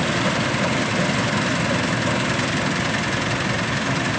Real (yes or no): yes